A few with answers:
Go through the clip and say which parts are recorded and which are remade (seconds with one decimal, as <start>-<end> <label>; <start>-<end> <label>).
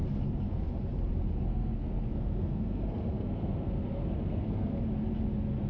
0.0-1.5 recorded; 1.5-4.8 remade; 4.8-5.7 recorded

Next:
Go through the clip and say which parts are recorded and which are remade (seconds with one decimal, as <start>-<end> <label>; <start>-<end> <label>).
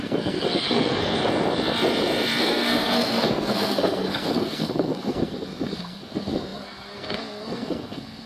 0.0-1.2 remade; 1.2-2.4 recorded; 2.4-8.3 remade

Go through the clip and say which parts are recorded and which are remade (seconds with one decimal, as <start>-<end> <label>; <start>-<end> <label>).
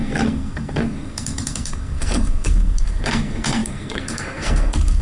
0.0-5.0 remade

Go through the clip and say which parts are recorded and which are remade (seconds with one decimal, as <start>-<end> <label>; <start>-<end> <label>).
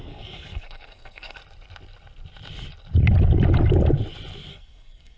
0.0-1.4 remade; 1.4-4.5 recorded; 4.5-5.2 remade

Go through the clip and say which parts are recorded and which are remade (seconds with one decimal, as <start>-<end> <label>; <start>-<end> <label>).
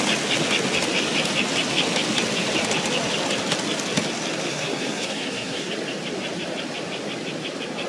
0.0-4.5 recorded; 4.5-5.7 remade; 5.7-7.9 recorded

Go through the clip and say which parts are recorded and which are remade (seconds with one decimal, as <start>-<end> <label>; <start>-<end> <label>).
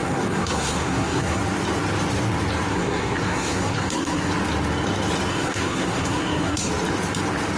0.0-1.4 remade; 1.4-2.7 recorded; 2.7-4.3 remade; 4.3-5.3 recorded; 5.3-6.7 remade; 6.7-7.6 recorded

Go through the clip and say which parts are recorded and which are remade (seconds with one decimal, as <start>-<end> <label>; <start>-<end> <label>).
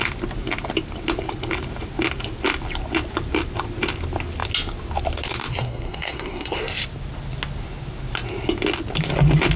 0.0-5.5 recorded; 5.5-6.6 remade; 6.6-9.6 recorded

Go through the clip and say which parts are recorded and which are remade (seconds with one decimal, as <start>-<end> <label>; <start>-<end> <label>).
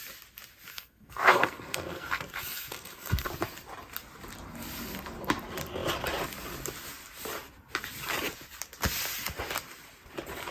0.0-0.7 recorded; 0.7-3.3 remade; 3.3-10.5 recorded